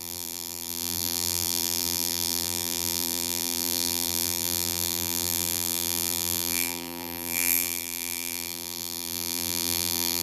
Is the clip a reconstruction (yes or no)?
yes